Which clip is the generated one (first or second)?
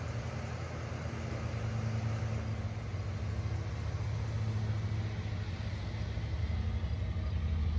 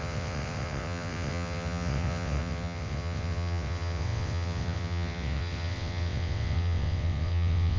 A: second